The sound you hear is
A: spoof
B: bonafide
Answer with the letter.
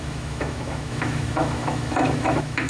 A